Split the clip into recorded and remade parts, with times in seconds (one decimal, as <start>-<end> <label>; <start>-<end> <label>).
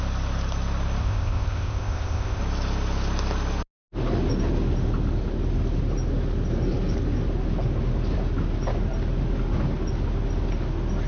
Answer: 0.0-1.0 recorded; 1.0-2.4 remade; 2.4-11.1 recorded